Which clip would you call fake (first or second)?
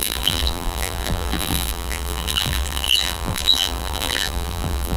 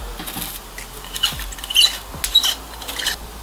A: first